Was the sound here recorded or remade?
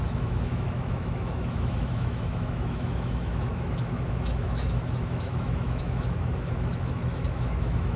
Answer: remade